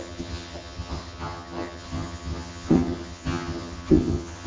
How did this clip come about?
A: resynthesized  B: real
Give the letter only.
A